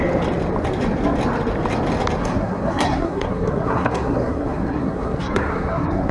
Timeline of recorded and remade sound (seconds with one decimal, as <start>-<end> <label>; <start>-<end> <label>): 0.0-2.2 recorded; 2.2-6.1 remade